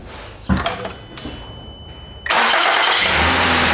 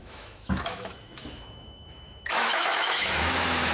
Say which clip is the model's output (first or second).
second